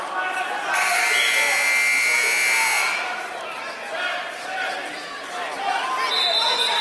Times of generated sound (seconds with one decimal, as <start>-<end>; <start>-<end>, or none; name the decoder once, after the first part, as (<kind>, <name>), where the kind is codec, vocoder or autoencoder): 2.8-4.7 (vocoder, BigVGAN v2)